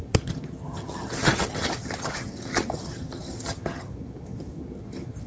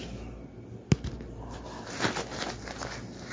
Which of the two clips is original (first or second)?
second